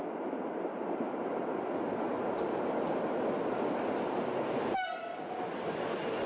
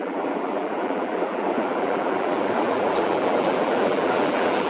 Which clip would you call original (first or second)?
first